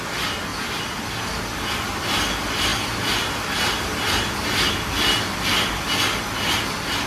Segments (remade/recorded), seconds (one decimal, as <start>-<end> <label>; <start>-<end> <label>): 0.0-0.5 recorded; 0.5-1.2 remade; 1.2-7.1 recorded